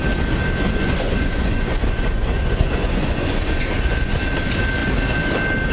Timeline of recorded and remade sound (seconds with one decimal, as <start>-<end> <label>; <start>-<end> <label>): 0.0-0.8 recorded; 0.8-4.2 remade; 4.2-5.7 recorded

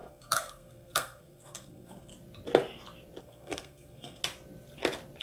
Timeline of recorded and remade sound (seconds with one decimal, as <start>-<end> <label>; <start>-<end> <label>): 0.0-2.1 remade; 2.1-3.2 recorded; 3.2-4.2 remade; 4.2-5.2 recorded

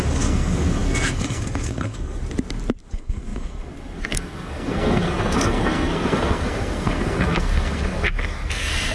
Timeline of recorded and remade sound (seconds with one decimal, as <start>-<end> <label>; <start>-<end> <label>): 0.0-2.2 remade; 2.2-2.9 recorded; 2.9-8.9 remade